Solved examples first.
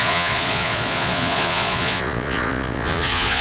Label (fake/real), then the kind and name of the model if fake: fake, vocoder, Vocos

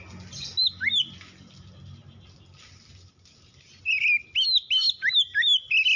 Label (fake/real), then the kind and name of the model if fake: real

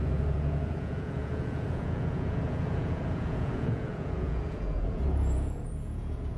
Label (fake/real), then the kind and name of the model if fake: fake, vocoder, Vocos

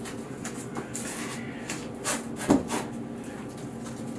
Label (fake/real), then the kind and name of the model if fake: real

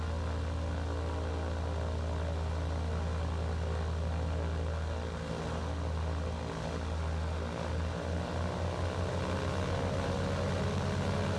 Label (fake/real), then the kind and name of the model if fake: real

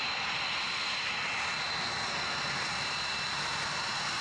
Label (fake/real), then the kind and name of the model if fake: real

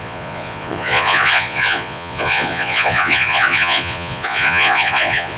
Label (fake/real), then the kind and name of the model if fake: fake, vocoder, Vocos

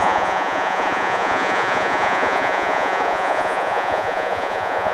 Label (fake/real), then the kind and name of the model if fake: fake, vocoder, Vocos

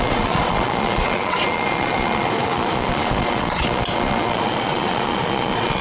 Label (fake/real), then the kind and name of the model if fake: fake, vocoder, Vocos